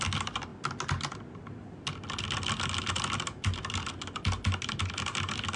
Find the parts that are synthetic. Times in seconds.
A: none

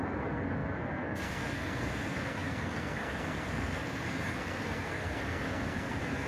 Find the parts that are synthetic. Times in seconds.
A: 0.0-6.3 (codec, SNAC)

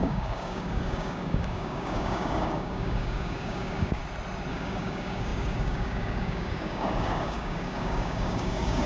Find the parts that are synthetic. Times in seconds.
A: 0.0-4.0 (codec, DAC); 4.5-8.9

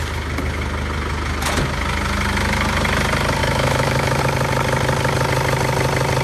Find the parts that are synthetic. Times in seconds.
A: 3.4-4.2 (autoencoder, DAC-VAE)

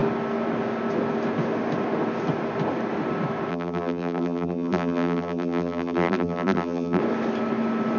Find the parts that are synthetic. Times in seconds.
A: 3.5-7.0 (vocoder, BigVGAN v2)

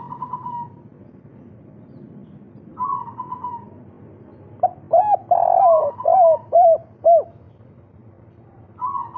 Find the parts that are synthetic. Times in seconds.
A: none

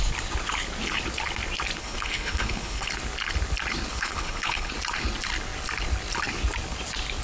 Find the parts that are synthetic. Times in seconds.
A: 1.8-2.9 (codec, HILCodec); 3.9-4.7